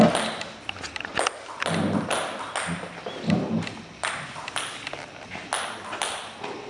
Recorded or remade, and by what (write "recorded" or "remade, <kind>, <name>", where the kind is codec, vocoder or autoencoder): recorded